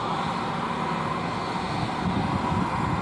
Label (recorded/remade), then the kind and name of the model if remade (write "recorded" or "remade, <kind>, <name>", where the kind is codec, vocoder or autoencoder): recorded